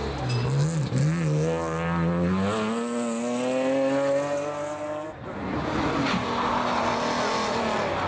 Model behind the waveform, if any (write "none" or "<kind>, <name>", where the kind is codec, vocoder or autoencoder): none